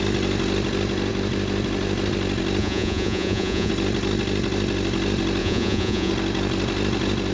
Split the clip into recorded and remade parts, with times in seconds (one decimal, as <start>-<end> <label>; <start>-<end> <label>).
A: 0.0-2.6 recorded; 2.6-3.7 remade; 3.7-5.4 recorded; 5.4-6.1 remade; 6.1-7.3 recorded